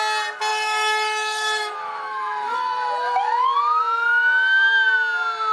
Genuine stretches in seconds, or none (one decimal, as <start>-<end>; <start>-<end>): 0.0-0.5; 3.8-5.5